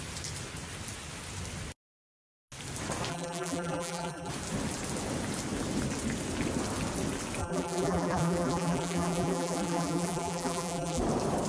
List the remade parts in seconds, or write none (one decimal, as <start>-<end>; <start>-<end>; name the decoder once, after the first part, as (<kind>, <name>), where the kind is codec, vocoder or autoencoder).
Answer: 3.1-4.3 (vocoder, BigVGAN v2); 7.4-11.0